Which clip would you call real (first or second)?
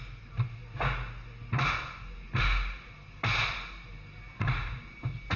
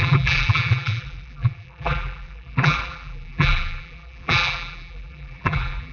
first